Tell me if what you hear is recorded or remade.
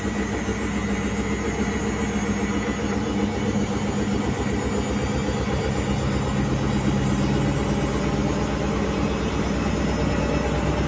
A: recorded